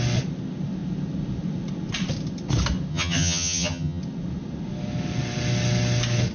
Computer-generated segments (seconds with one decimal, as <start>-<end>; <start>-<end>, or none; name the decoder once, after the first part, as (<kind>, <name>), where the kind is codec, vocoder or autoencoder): 2.9-4.0 (vocoder, HiFi-GAN)